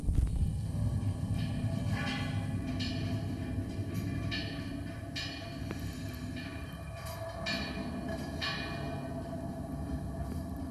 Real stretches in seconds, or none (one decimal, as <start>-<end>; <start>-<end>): 0.0-10.7